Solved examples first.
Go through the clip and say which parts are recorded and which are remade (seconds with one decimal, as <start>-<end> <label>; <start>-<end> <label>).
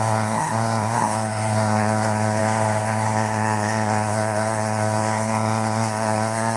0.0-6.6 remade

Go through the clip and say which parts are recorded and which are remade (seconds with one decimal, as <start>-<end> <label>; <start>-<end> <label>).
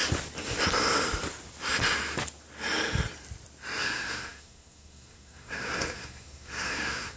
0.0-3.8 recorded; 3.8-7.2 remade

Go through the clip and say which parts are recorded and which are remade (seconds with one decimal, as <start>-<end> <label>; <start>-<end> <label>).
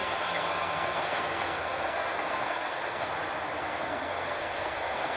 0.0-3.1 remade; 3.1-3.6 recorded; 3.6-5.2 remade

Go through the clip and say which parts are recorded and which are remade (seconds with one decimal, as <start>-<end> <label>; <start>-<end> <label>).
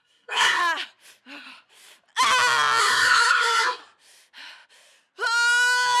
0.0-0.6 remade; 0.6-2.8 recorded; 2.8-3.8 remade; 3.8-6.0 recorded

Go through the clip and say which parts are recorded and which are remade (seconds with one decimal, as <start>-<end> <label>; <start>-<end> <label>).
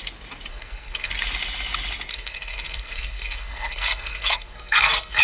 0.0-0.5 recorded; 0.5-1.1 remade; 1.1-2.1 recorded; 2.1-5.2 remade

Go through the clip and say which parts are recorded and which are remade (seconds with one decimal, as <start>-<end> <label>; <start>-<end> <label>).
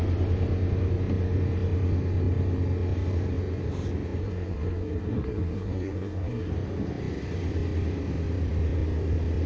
0.0-4.2 recorded; 4.2-6.5 remade; 6.5-9.5 recorded